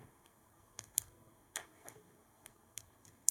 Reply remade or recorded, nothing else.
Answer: remade